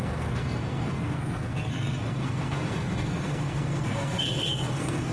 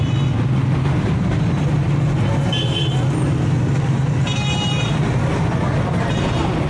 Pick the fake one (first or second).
first